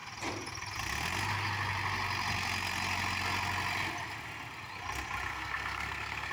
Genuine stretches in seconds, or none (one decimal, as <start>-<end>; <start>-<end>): 0.0-5.3